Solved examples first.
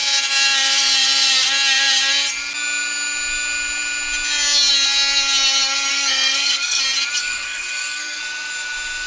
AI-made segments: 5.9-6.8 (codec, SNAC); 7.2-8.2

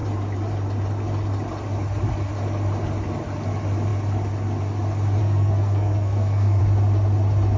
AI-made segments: 5.2-6.6 (codec, SNAC)

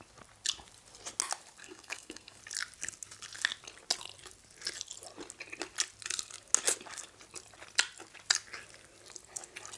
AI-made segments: 1.6-2.4 (codec, SNAC)

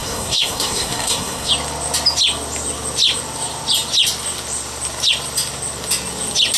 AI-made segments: 0.0-1.5 (codec, SNAC)

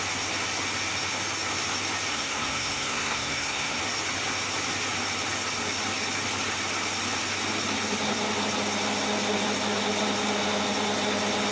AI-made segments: 2.1-3.8 (codec, SNAC)

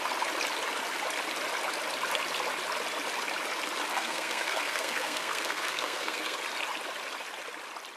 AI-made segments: 3.9-6.4 (codec, SNAC)

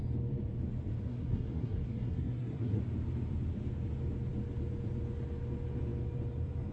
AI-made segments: 1.0-2.8 (codec, SNAC)

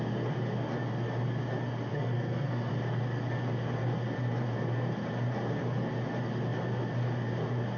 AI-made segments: 1.9-2.7 (codec, SNAC)